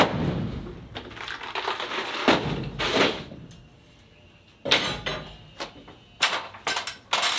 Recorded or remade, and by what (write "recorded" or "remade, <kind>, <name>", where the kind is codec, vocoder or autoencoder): recorded